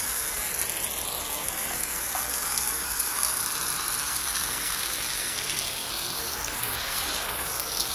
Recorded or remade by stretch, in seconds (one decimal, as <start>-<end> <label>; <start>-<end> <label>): 0.0-0.5 remade; 0.5-1.2 recorded; 1.2-3.4 remade; 3.4-4.0 recorded; 4.0-7.9 remade